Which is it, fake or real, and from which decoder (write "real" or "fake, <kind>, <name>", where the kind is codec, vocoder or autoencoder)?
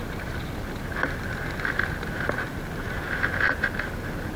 real